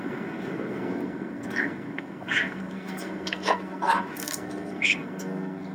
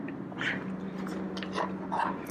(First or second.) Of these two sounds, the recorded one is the second